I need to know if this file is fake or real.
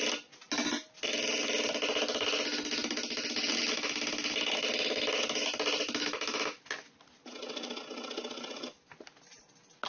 real